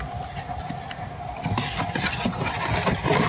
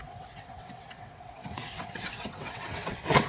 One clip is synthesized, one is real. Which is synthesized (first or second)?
second